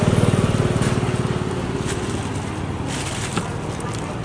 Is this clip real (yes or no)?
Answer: yes